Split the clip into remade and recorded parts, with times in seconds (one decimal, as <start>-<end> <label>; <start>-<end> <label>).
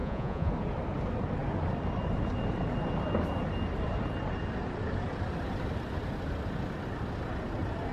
0.0-0.5 remade; 0.5-7.9 recorded